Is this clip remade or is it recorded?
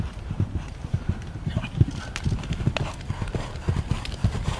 recorded